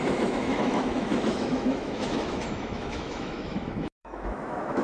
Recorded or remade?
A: remade